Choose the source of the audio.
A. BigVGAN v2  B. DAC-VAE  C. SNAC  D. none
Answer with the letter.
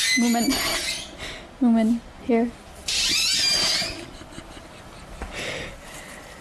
D